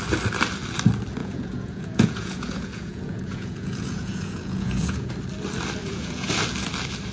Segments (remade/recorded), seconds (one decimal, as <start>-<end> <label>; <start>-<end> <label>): 0.0-1.2 recorded; 1.2-5.1 remade; 5.1-5.8 recorded; 5.8-6.3 remade; 6.3-7.1 recorded